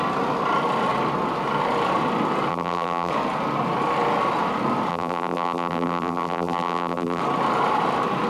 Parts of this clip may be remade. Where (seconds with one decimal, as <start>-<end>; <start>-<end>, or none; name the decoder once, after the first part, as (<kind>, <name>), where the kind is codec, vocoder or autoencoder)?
2.5-3.1 (vocoder, BigVGAN v2); 4.9-7.2